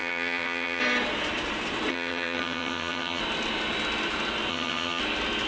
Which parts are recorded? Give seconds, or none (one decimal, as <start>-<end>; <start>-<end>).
0.8-1.9; 3.2-4.5; 5.0-5.5